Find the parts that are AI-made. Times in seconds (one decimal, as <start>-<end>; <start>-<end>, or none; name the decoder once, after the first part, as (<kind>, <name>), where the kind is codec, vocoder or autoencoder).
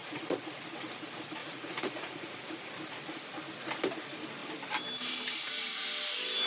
0.0-0.6 (vocoder, Vocos); 1.4-2.7